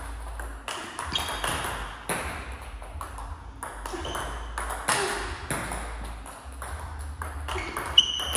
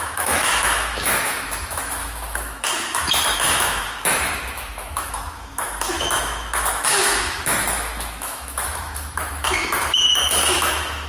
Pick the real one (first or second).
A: first